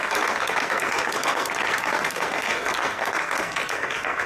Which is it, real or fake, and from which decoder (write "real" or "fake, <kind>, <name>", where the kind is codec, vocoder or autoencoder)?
fake, codec, SNAC